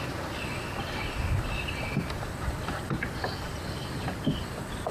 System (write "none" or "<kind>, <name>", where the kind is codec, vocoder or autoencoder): none